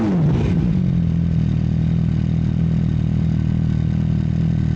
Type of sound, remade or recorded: recorded